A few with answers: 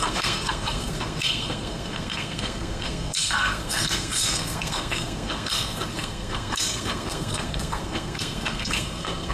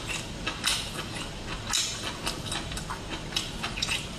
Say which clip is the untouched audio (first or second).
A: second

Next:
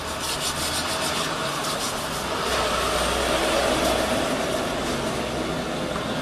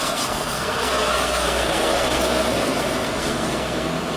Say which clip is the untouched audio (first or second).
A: first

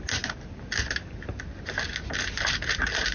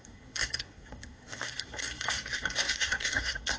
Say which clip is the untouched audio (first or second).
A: first